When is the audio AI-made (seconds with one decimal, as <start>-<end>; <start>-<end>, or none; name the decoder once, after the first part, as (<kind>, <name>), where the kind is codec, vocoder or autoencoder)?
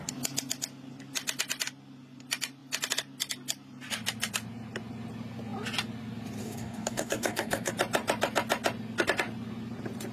6.4-7.7 (codec, DAC)